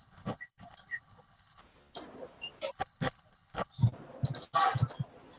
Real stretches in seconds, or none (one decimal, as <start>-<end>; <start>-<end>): 1.6-2.7; 3.8-5.4

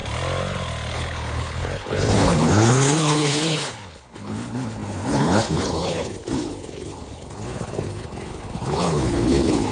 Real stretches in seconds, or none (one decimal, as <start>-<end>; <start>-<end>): 0.0-0.9